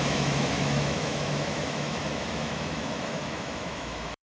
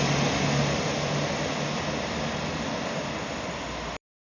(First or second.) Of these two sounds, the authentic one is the second